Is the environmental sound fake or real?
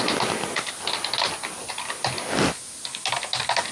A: real